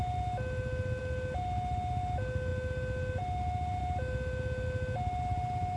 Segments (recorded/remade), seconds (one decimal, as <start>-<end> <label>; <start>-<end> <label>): 0.0-5.8 recorded